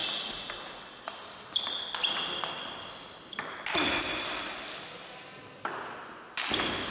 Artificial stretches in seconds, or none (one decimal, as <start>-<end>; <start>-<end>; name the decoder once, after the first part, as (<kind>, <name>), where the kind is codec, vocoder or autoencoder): none